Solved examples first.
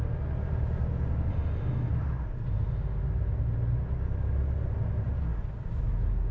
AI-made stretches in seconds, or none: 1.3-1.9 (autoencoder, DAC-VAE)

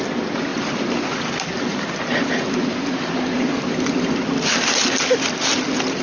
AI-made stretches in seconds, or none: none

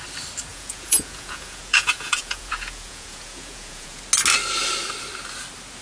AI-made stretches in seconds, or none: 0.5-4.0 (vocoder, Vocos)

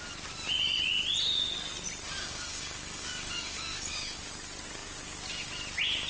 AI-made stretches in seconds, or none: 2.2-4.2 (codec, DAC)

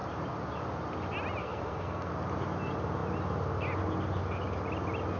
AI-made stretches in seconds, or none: 1.4-2.1 (codec, SNAC)